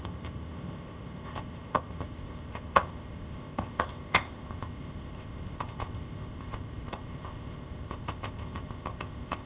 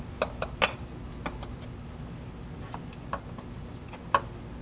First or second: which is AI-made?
first